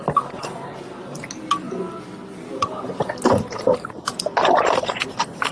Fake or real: real